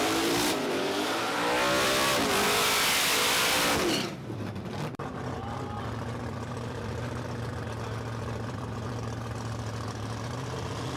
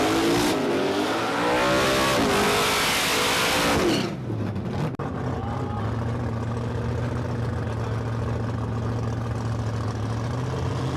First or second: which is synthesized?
first